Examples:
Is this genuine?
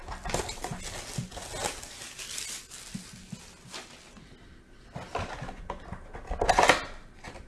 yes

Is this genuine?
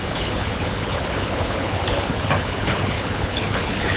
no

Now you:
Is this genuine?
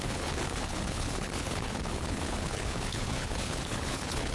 no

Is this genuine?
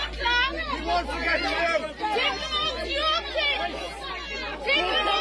yes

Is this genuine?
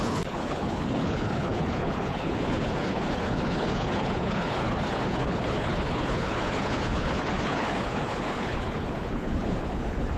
no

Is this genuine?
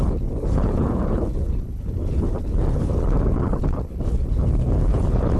no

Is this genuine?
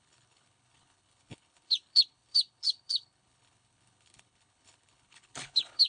no